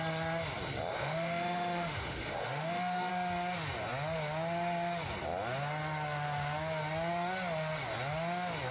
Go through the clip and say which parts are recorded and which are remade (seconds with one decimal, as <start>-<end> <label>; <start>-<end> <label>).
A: 0.0-0.9 recorded; 0.9-3.1 remade; 3.1-8.7 recorded